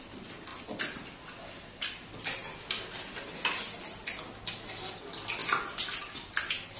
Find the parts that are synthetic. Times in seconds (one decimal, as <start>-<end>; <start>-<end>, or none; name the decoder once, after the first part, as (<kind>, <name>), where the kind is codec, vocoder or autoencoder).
none